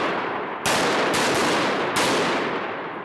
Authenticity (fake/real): real